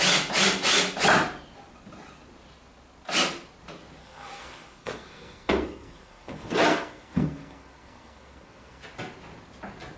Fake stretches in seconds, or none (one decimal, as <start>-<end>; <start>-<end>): 4.0-8.8